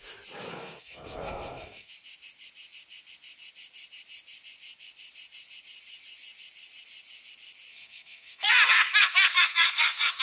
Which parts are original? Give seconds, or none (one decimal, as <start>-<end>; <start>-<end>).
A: 0.0-0.5; 1.9-7.7; 8.5-9.0